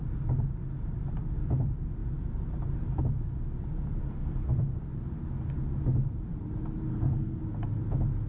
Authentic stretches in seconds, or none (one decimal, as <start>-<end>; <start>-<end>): 0.0-4.0; 4.8-6.9; 7.4-8.3